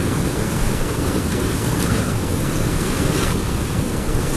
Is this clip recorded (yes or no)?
no